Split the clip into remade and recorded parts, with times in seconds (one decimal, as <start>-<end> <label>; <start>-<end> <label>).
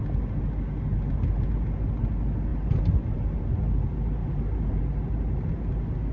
0.0-2.5 recorded; 2.5-3.4 remade; 3.4-4.2 recorded; 4.2-4.8 remade; 4.8-6.1 recorded